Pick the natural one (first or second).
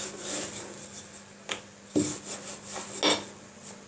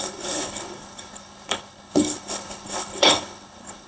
first